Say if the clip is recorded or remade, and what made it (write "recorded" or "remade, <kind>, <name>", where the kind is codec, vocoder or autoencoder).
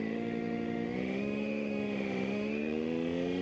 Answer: remade, autoencoder, DAC-VAE